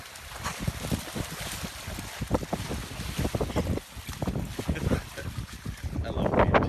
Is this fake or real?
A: real